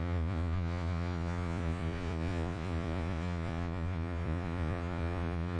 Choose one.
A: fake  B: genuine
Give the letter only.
A